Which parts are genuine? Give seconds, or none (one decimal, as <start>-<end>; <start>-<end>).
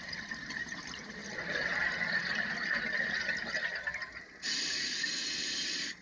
0.0-6.0